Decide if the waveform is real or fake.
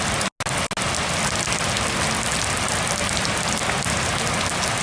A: real